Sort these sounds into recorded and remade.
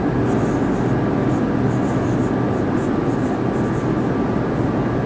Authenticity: recorded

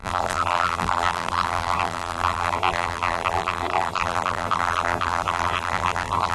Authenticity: remade